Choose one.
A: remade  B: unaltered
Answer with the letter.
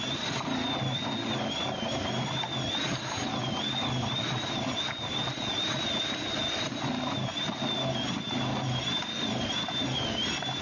B